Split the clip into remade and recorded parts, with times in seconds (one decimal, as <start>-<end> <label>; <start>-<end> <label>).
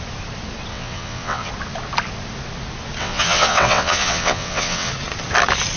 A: 0.0-0.7 recorded; 0.7-1.5 remade; 1.5-3.0 recorded; 3.0-4.9 remade; 4.9-5.8 recorded